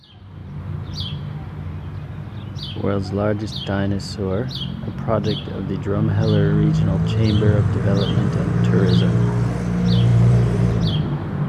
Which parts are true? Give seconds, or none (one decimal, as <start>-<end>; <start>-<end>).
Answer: 0.0-0.4; 1.2-10.1; 10.8-11.5